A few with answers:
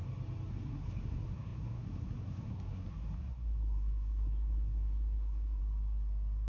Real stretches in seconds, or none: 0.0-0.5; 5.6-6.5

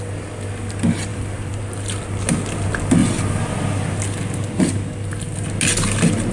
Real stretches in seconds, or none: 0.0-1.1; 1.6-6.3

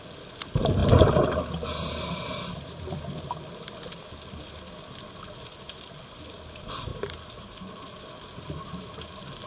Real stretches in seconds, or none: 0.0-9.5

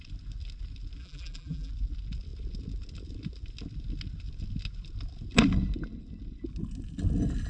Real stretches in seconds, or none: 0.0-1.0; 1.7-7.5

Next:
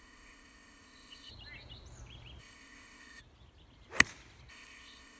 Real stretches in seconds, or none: 1.3-2.4; 3.2-4.5

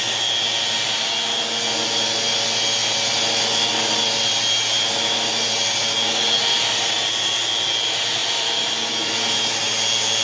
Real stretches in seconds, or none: 0.0-10.2

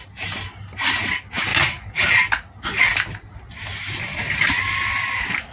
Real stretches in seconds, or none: 0.0-5.5